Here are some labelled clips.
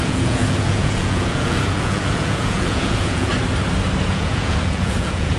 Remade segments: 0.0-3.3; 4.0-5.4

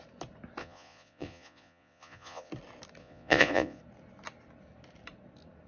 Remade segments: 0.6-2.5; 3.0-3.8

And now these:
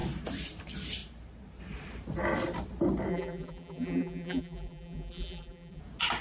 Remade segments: 3.1-5.8

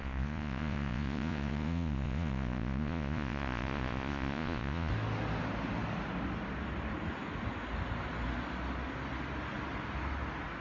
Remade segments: 0.0-4.9